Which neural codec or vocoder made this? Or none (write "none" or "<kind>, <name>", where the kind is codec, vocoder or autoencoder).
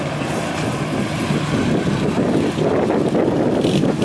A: none